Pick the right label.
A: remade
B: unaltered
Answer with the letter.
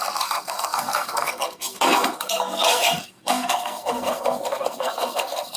A